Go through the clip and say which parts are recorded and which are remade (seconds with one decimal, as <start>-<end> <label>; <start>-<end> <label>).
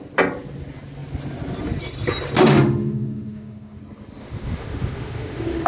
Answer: 0.0-2.4 recorded; 2.4-3.8 remade; 3.8-4.2 recorded; 4.2-5.7 remade